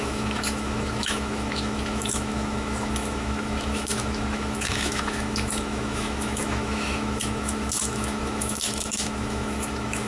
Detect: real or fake fake